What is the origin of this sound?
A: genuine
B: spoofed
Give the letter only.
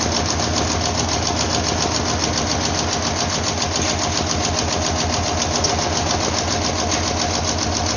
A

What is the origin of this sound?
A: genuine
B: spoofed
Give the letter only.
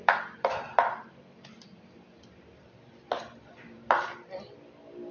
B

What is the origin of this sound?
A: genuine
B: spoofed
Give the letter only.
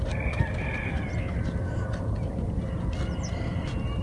A